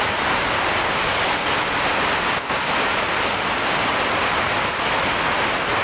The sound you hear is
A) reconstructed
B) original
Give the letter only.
B